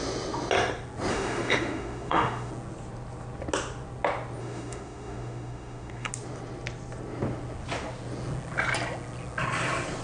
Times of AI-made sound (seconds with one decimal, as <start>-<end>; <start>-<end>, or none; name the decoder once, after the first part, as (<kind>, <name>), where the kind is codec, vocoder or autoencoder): 1.1-2.5 (autoencoder, DAC-VAE); 4.4-6.1